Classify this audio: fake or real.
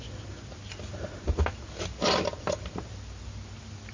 real